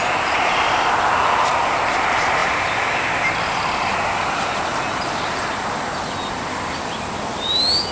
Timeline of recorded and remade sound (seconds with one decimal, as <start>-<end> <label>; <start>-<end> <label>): 0.0-7.9 recorded